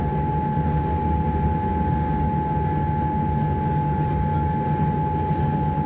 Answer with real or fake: real